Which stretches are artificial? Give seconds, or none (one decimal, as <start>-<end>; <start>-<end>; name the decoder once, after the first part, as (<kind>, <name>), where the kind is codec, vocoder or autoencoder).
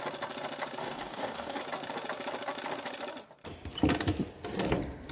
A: 0.8-1.6 (codec, DAC)